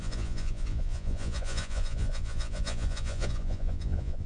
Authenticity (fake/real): fake